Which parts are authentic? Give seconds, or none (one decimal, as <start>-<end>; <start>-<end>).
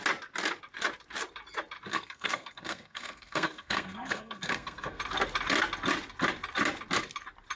0.0-1.9; 5.0-7.6